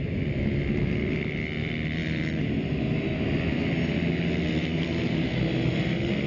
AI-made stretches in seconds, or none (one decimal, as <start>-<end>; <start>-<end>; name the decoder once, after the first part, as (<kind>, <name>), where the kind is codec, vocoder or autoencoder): none